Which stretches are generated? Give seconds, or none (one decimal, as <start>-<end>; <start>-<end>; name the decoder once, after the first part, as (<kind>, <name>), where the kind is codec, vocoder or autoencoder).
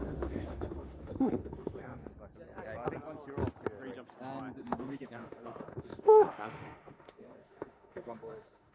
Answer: 0.0-2.1 (autoencoder, DAC-VAE); 4.6-8.7